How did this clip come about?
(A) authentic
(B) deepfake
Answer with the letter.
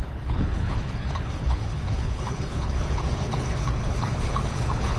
B